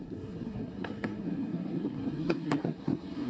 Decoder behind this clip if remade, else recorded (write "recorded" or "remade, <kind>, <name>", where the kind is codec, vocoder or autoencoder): remade, codec, SNAC